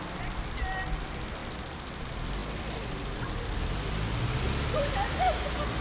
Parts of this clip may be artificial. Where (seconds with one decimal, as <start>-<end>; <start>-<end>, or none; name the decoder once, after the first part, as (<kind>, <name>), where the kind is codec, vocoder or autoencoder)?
none